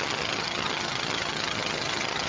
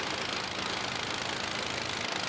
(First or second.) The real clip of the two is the second